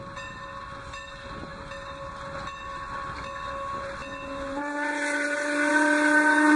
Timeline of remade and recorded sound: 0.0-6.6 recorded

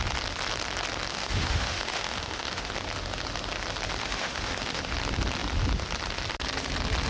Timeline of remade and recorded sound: 0.0-1.1 recorded; 1.1-2.7 remade; 2.7-4.0 recorded; 4.0-4.8 remade; 4.8-7.1 recorded